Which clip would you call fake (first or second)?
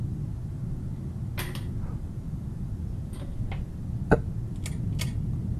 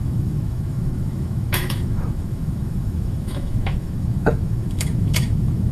second